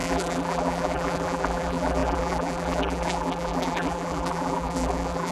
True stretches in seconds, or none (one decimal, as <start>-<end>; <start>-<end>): none